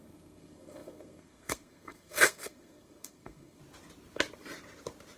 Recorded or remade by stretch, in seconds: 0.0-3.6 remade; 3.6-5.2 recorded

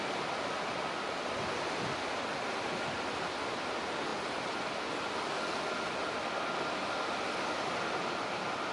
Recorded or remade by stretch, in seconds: 0.0-8.7 recorded

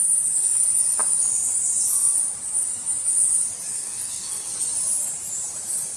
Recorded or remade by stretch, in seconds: 0.0-3.7 recorded; 3.7-4.6 remade; 4.6-6.0 recorded

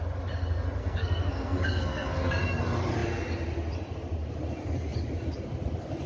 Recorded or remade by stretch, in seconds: 0.0-0.8 recorded; 0.8-2.6 remade; 2.6-6.1 recorded

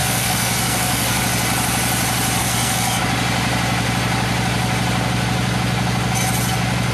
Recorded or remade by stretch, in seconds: 0.0-1.2 remade; 1.2-2.4 recorded; 2.4-3.0 remade; 3.0-6.9 recorded